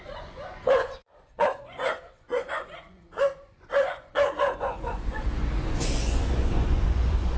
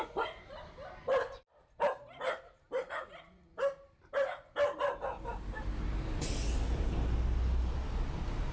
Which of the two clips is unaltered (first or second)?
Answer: second